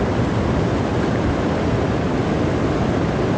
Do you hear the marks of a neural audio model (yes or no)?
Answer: no